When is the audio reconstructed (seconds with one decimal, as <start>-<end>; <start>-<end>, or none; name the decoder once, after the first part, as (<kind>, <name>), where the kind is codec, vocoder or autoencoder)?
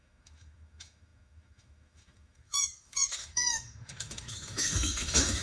0.0-5.4 (autoencoder, DAC-VAE)